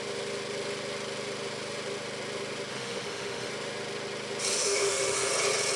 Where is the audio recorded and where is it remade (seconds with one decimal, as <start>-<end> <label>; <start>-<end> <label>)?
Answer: 0.0-2.7 recorded; 2.7-3.5 remade; 3.5-4.5 recorded; 4.5-5.3 remade; 5.3-5.8 recorded